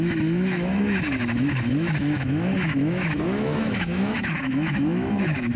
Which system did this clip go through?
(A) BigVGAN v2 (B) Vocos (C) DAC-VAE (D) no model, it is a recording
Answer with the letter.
C